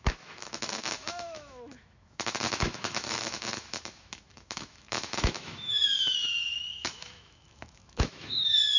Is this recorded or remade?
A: remade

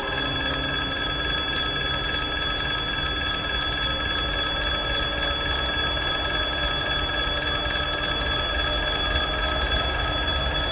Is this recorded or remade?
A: recorded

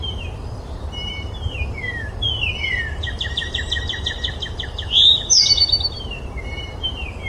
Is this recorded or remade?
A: remade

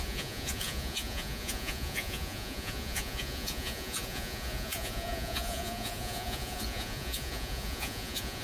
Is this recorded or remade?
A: remade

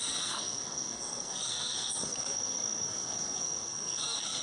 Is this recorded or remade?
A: remade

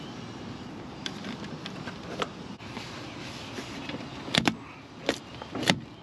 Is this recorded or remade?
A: recorded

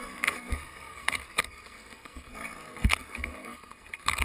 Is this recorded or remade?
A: remade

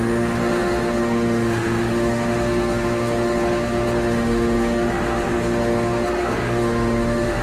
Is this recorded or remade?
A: remade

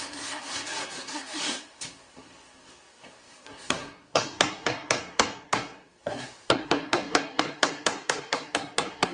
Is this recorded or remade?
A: remade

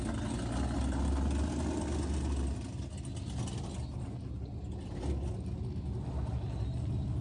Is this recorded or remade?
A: recorded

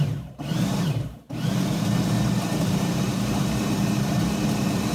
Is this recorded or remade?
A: remade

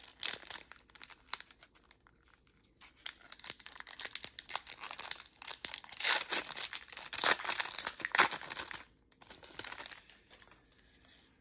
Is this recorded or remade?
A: recorded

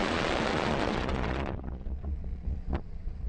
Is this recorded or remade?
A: remade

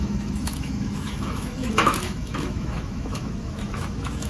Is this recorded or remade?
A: remade